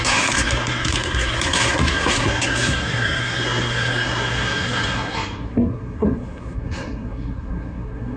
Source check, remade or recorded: remade